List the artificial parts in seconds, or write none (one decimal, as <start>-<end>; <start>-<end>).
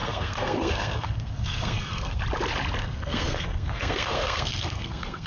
0.0-2.2; 2.8-5.3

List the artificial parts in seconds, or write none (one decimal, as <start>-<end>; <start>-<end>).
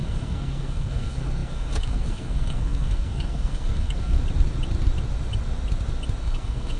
0.0-4.2; 6.2-6.8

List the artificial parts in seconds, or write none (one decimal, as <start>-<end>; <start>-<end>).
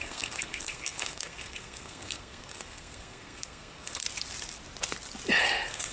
0.0-4.0; 5.4-5.9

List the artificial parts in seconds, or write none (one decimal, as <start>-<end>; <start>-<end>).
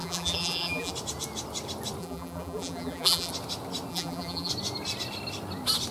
0.0-0.9; 2.0-3.3; 3.9-4.5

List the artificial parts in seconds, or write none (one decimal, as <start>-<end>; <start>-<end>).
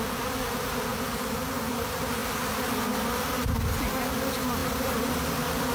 4.6-5.7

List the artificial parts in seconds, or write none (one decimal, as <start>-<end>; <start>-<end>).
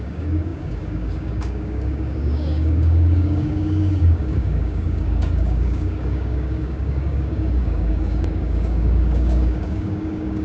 0.0-10.4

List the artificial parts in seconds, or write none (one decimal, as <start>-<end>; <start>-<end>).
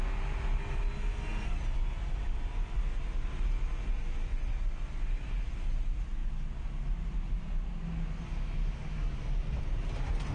none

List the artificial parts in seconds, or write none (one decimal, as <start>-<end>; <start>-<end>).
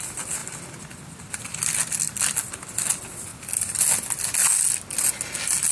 3.3-3.9